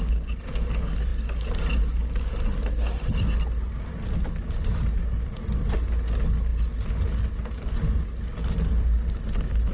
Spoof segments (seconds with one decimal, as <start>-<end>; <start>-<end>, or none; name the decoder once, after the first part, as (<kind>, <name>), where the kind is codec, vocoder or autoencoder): none